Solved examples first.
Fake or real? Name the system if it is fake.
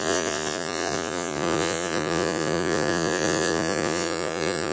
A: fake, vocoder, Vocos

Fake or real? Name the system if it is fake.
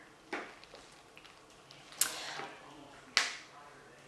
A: real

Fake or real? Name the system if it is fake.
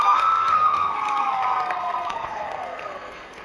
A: fake, codec, SNAC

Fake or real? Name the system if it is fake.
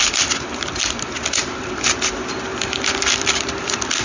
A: real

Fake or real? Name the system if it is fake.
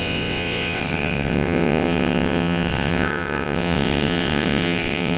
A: fake, vocoder, WaveNeXt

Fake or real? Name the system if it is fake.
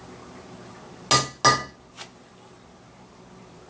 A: real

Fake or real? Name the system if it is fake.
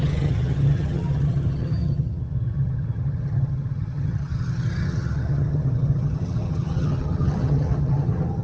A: fake, vocoder, HiFi-GAN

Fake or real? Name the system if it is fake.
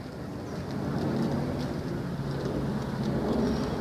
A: real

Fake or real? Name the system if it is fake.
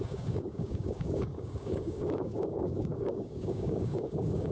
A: fake, codec, DAC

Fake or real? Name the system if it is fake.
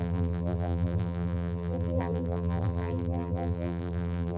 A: fake, vocoder, BigVGAN v2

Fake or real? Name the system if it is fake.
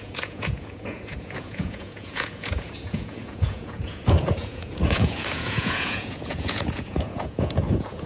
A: fake, vocoder, Vocos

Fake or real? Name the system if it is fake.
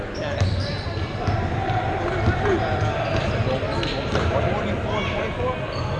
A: real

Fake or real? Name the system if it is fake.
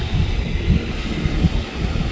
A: real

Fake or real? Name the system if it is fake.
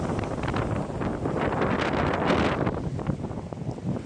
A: real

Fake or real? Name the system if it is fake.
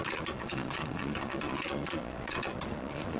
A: fake, vocoder, Vocos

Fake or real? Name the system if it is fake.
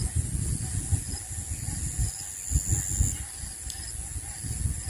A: real